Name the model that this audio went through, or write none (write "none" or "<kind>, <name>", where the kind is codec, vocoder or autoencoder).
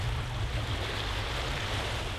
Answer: none